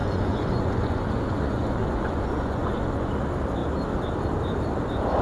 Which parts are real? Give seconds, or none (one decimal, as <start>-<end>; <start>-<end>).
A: 3.1-5.2